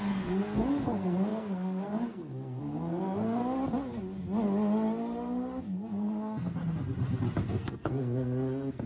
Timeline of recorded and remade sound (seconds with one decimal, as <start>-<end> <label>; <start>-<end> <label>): 0.0-3.4 remade; 3.4-5.6 recorded; 5.6-6.6 remade; 6.6-7.4 recorded; 7.4-8.9 remade

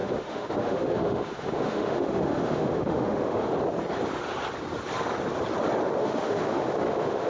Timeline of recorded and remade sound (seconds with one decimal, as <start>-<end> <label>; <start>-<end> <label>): 0.0-3.5 remade; 3.5-6.0 recorded; 6.0-7.3 remade